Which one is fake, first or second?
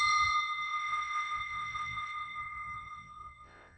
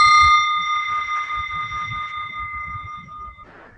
first